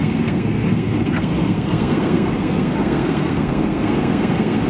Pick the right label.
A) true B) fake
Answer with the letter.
B